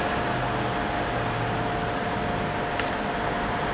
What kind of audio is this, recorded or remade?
recorded